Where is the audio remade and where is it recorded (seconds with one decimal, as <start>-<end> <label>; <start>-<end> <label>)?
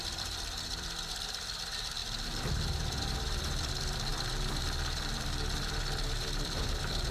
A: 0.0-2.0 remade; 2.0-3.0 recorded; 3.0-7.1 remade